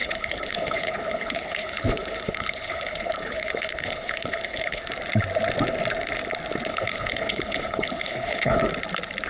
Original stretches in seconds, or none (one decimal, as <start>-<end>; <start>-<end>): 4.8-6.7; 8.6-9.3